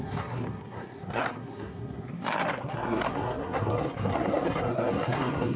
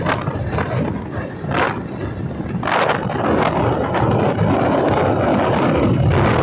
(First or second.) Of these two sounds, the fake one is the first